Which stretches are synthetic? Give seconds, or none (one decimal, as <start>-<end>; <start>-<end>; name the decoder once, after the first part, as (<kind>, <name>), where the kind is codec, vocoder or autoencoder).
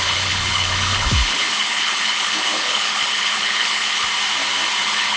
0.0-4.0 (codec, HILCodec); 4.8-5.2